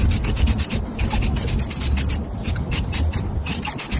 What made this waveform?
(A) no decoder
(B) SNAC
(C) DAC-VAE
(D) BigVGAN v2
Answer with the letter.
D